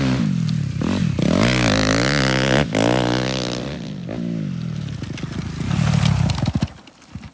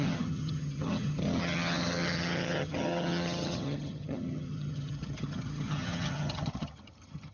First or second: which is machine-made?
second